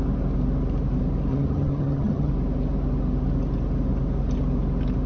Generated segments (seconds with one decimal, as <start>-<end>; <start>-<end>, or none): 1.3-2.3